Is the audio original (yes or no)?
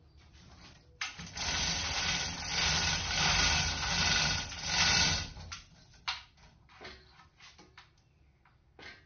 yes